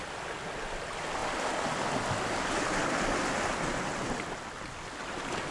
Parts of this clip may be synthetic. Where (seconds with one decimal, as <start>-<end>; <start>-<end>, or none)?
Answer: none